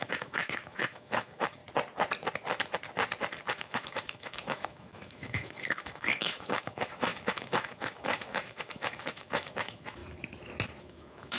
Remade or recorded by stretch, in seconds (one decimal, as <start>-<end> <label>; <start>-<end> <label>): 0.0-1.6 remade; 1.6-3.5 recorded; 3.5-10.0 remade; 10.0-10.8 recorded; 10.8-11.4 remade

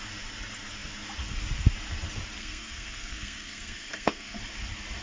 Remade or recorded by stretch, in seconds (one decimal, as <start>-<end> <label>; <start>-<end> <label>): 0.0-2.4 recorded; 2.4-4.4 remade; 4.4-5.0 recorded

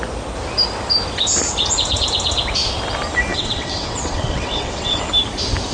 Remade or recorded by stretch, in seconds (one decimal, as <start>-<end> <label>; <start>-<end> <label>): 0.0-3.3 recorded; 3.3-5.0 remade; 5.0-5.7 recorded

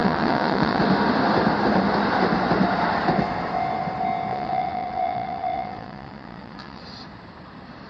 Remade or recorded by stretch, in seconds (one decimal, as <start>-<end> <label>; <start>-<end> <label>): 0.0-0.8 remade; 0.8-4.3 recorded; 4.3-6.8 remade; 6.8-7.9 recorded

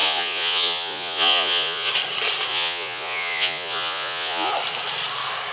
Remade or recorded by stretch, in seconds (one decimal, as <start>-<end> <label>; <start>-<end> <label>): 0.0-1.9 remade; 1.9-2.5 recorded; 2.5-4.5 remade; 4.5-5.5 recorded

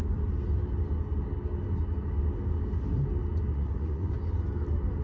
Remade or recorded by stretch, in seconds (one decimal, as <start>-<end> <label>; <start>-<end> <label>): 0.0-3.5 recorded; 3.5-4.1 remade; 4.1-5.0 recorded